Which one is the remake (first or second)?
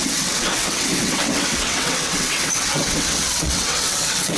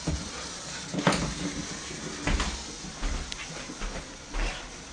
first